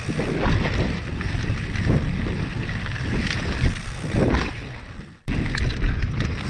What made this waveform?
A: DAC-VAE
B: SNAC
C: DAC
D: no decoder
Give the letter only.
D